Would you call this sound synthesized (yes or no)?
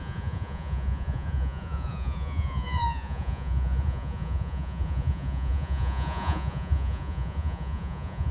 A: yes